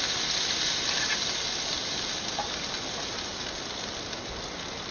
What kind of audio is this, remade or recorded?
recorded